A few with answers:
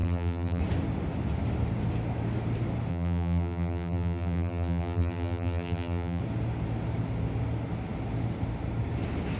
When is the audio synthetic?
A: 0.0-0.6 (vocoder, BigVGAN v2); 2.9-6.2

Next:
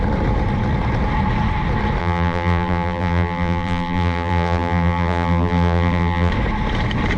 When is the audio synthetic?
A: 2.0-6.3 (vocoder, BigVGAN v2)

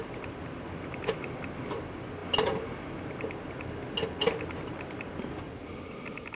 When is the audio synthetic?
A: none

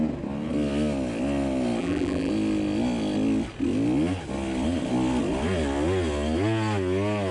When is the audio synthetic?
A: 1.8-2.3 (vocoder, BigVGAN v2)

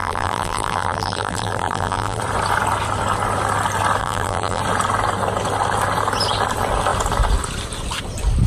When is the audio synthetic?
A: 0.0-2.2 (vocoder, BigVGAN v2); 4.0-4.6

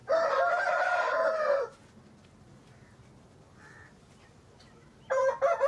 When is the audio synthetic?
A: none

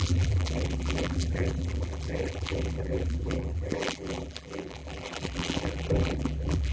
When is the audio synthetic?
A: 0.0-6.7 (vocoder, BigVGAN v2)

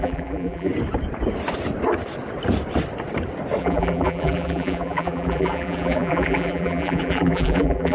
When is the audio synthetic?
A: 0.0-0.7 (vocoder, BigVGAN v2); 3.6-7.9